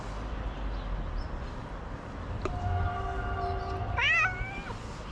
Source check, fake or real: real